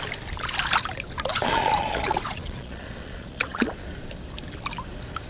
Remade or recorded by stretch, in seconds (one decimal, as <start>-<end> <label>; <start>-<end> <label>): 0.0-1.3 recorded; 1.3-3.7 remade; 3.7-5.3 recorded